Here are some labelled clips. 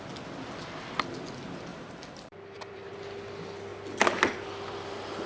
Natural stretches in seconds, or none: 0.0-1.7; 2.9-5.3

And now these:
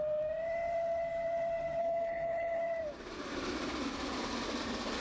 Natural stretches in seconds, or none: 0.0-1.8; 2.6-5.0

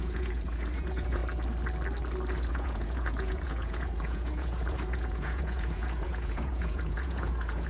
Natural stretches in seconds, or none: 1.2-2.5

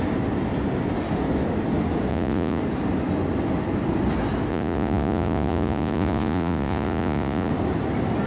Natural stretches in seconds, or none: 0.0-2.1; 2.6-4.5; 7.5-8.3